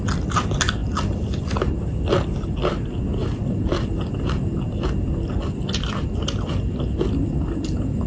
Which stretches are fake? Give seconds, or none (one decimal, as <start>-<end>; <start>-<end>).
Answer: none